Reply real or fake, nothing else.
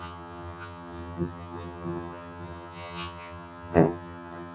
fake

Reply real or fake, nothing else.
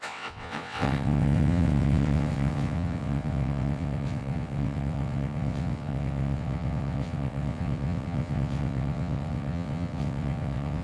fake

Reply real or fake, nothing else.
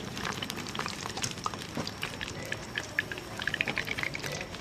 fake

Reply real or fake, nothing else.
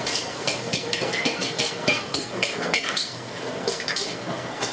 fake